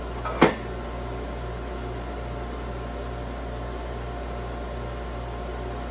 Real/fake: real